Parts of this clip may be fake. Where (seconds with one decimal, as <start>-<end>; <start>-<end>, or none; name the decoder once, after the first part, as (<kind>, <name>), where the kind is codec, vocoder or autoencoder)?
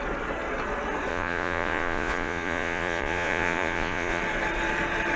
1.1-4.2 (vocoder, Vocos)